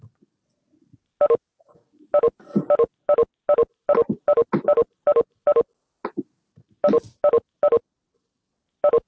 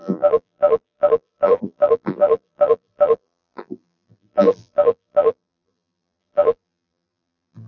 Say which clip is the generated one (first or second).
second